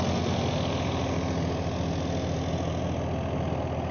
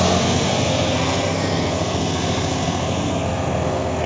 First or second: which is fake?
second